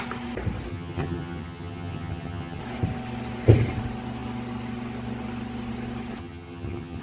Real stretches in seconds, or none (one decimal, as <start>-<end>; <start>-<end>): 0.0-0.7; 2.6-6.2